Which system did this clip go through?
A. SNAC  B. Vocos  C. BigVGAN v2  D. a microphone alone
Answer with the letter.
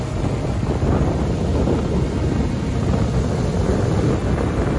D